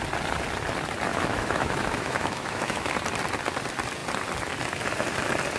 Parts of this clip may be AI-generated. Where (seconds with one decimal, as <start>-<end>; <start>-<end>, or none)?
1.1-2.9